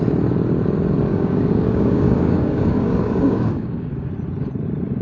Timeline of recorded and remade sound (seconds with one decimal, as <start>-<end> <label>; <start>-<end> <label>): 0.0-1.1 recorded; 1.1-4.1 remade; 4.1-5.0 recorded

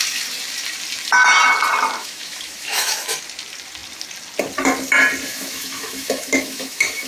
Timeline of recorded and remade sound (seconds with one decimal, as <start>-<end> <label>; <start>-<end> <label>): 0.0-2.0 recorded; 2.0-3.2 remade; 3.2-5.3 recorded; 5.3-7.1 remade

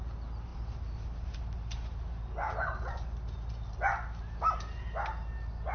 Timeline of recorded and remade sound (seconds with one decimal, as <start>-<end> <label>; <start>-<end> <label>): 0.0-5.7 recorded

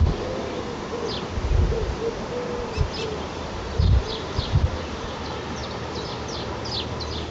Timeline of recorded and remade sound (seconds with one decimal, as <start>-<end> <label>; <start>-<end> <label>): 0.0-3.1 recorded; 3.1-5.0 remade; 5.0-5.6 recorded; 5.6-6.6 remade; 6.6-7.3 recorded

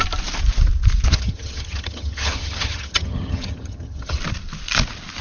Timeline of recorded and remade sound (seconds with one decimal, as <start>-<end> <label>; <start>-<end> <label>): 0.0-1.1 recorded; 1.1-4.2 remade; 4.2-5.2 recorded

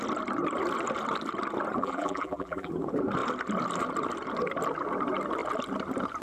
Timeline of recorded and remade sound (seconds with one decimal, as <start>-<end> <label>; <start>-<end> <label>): 0.0-1.8 recorded; 1.8-2.7 remade; 2.7-6.2 recorded

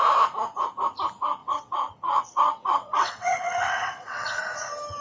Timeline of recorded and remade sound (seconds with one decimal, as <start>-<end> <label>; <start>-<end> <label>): 0.0-1.4 recorded; 1.4-4.4 remade; 4.4-5.0 recorded

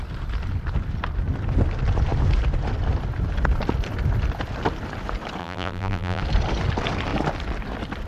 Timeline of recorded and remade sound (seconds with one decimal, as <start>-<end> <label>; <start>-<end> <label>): 0.0-5.4 recorded; 5.4-6.2 remade; 6.2-8.1 recorded